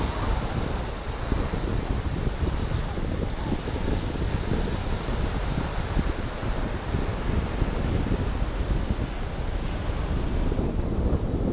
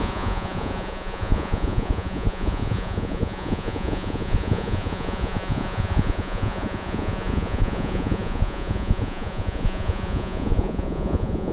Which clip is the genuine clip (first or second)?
first